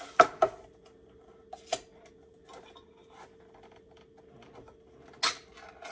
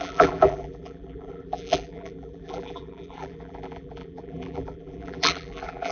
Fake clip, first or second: second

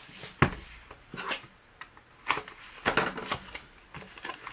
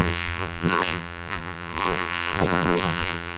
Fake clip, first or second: second